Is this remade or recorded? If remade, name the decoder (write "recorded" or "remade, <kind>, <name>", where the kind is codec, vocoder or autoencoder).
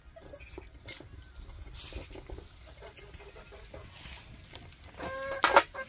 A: recorded